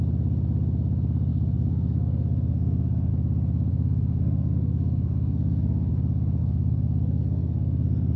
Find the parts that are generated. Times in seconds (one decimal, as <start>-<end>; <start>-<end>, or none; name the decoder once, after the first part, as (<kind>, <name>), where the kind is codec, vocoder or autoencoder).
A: 1.3-3.1 (codec, SNAC); 3.7-5.9; 6.4-8.2